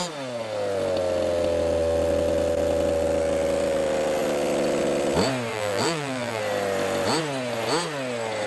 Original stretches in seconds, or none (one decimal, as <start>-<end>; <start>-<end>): 0.0-5.5; 6.4-8.5